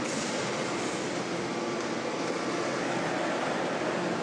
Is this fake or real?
real